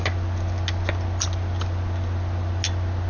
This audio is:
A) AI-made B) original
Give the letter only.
B